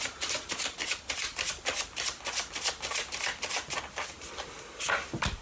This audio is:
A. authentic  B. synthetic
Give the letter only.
A